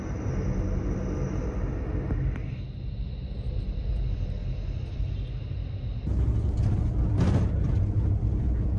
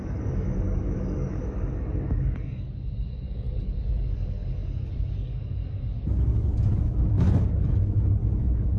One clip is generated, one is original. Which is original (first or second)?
first